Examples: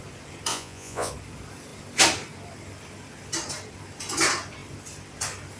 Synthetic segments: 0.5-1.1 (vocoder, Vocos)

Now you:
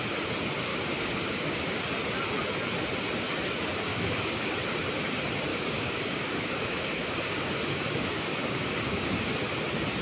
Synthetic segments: 0.7-1.8 (codec, DAC); 3.9-4.5; 5.5-9.4

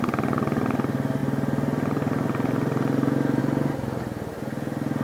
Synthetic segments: none

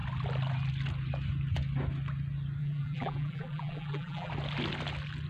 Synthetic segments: 2.6-4.3 (vocoder, BigVGAN v2)